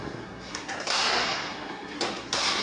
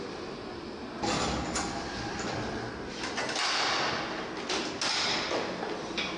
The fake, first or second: first